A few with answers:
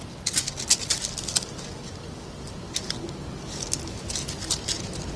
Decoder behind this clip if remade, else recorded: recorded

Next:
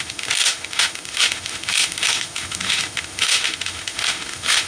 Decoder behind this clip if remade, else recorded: remade, autoencoder, DAC-VAE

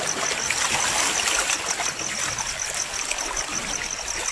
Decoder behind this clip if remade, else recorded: recorded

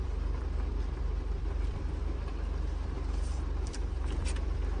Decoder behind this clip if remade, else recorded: remade, vocoder, BigVGAN v2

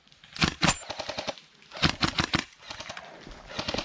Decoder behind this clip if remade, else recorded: recorded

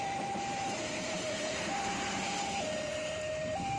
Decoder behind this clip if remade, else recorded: remade, vocoder, BigVGAN v2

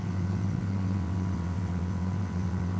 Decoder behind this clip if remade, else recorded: remade, vocoder, WaveNeXt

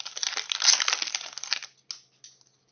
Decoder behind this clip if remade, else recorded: recorded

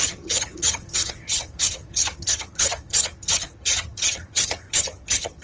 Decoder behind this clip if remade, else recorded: remade, vocoder, HiFi-GAN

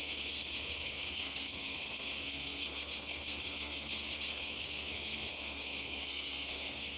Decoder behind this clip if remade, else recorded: remade, codec, SNAC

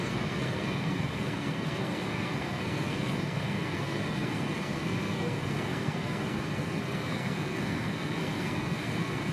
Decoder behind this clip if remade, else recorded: remade, codec, SNAC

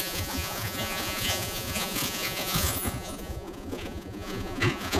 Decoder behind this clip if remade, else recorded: remade, vocoder, Vocos